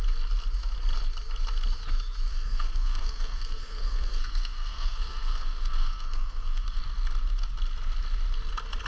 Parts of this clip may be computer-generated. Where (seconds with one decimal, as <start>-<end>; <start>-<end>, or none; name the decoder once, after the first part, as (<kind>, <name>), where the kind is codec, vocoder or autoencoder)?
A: 2.3-6.8 (codec, SNAC)